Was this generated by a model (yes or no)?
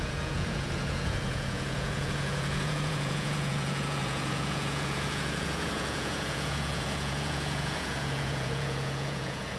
yes